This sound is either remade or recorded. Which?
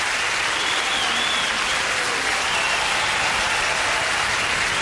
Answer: recorded